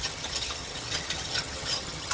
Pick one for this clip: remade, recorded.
remade